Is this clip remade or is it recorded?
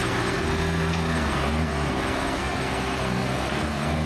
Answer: remade